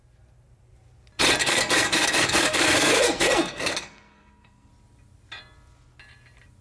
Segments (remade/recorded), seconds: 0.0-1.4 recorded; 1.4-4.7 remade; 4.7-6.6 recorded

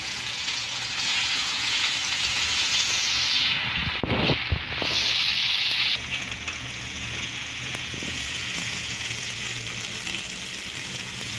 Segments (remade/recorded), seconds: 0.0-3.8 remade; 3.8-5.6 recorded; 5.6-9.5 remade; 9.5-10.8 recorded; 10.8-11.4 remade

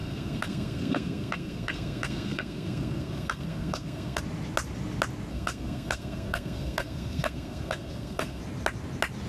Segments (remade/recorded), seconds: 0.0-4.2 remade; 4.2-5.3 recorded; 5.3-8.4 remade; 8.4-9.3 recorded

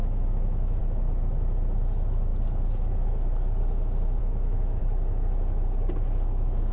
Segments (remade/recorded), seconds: 0.0-0.8 remade; 0.8-4.2 recorded; 4.2-4.8 remade; 4.8-6.7 recorded